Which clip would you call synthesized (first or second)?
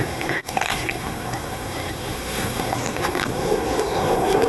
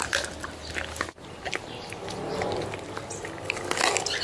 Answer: first